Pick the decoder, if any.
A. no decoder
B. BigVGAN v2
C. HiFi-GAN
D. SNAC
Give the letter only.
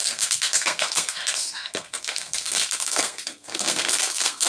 D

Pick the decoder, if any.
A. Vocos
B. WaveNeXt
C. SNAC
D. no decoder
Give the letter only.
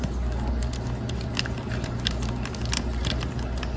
D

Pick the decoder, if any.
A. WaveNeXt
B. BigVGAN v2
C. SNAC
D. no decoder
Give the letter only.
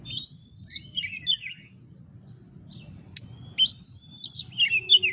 D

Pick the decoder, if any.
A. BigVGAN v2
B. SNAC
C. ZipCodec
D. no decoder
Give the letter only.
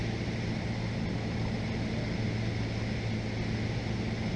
D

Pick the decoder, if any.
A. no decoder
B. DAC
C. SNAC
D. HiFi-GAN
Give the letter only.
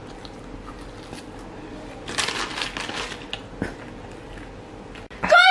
A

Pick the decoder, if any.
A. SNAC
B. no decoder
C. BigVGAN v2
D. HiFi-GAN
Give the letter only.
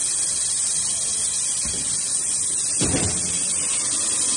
B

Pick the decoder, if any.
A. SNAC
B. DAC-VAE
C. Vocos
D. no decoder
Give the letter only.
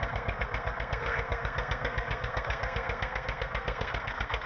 A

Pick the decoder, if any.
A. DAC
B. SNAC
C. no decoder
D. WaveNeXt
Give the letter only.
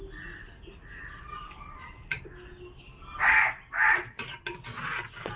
C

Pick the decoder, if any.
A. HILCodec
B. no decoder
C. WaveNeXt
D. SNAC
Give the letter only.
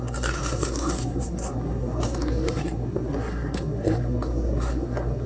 D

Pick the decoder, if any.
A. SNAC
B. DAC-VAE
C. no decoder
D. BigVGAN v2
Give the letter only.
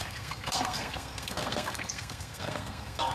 A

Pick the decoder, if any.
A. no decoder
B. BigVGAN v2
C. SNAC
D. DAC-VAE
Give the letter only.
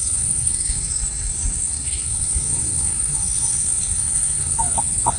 C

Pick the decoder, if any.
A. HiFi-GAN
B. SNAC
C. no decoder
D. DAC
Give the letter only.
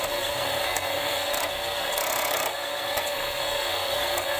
B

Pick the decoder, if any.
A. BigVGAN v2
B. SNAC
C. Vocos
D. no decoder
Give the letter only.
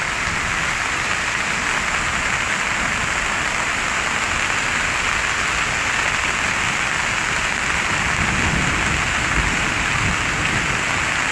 D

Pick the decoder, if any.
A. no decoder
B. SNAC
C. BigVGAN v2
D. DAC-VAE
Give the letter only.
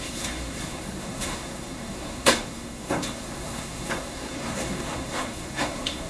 B